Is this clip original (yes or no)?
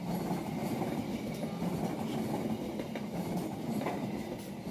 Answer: yes